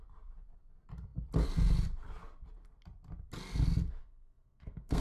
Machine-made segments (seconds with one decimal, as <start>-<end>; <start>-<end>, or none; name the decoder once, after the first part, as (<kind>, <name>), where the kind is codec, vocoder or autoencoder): 4.0-5.0 (codec, SNAC)